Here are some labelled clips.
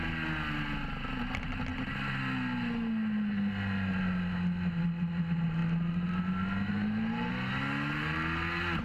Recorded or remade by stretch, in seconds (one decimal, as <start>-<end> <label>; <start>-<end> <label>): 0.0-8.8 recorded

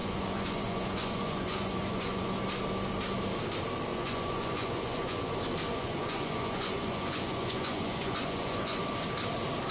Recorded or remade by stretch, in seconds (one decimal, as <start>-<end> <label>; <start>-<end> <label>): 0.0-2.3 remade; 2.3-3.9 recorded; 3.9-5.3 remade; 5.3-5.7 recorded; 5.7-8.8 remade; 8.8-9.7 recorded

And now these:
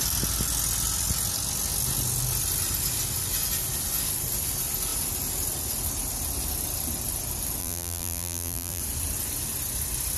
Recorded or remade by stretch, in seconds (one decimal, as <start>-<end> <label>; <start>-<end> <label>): 0.0-7.6 recorded; 7.6-8.8 remade; 8.8-10.2 recorded

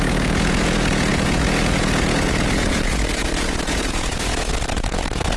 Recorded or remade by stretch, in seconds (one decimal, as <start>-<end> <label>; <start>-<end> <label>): 0.0-5.4 remade

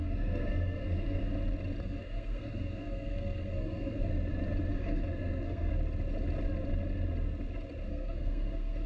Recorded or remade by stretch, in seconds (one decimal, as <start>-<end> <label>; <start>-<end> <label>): 0.0-1.3 remade; 1.3-1.8 recorded; 1.8-4.1 remade; 4.1-4.7 recorded; 4.7-5.7 remade; 5.7-7.9 recorded; 7.9-8.9 remade

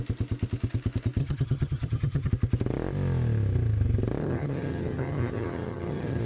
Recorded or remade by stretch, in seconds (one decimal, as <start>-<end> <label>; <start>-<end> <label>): 0.0-1.2 recorded; 1.2-2.3 remade; 2.3-4.2 recorded; 4.2-6.2 remade